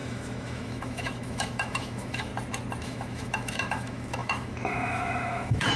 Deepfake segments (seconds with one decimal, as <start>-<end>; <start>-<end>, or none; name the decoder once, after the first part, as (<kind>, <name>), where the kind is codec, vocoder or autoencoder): 0.0-2.3 (autoencoder, DAC-VAE); 2.8-5.8